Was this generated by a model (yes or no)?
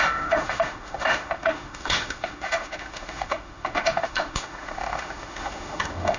yes